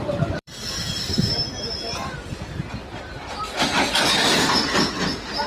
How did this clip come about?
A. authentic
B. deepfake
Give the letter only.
B